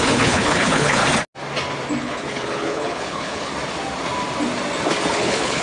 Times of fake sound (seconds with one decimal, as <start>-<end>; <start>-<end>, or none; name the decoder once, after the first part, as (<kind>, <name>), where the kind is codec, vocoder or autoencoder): 0.0-1.0 (codec, HILCodec); 2.0-3.5; 5.1-5.6